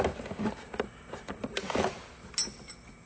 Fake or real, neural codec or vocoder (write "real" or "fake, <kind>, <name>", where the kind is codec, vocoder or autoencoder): real